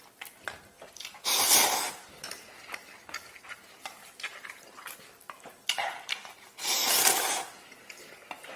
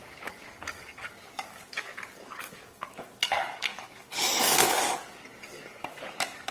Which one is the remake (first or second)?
second